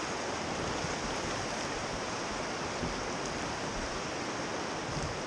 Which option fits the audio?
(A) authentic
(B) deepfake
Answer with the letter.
A